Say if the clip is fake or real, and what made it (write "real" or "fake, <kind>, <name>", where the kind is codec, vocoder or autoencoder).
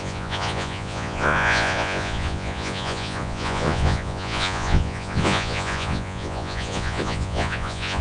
fake, vocoder, Vocos